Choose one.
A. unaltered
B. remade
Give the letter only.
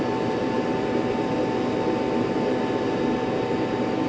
A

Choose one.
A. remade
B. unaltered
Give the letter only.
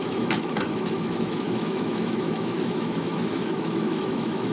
A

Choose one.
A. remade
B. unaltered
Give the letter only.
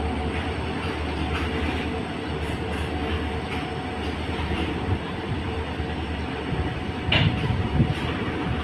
B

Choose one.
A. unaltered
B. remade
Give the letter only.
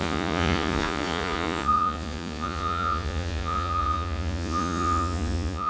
B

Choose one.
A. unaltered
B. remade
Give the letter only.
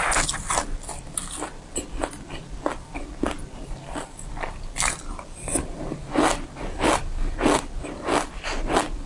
A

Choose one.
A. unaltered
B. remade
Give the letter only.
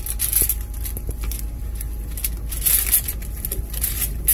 A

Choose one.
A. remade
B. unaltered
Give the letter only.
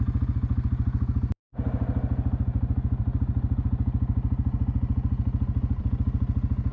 B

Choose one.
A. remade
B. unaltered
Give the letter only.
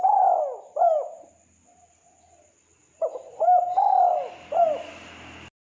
B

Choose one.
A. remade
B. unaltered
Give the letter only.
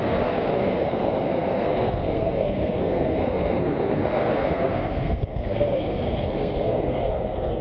A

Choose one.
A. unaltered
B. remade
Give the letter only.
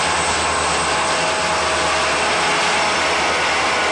A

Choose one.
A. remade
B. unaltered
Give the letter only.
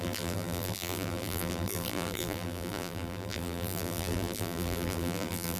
A